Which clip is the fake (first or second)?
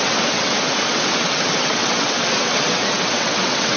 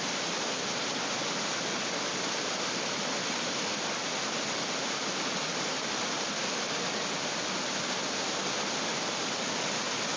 first